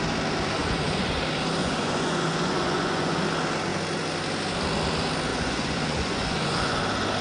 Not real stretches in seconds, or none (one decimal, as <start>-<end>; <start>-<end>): 0.6-1.2; 1.6-3.2; 5.3-6.8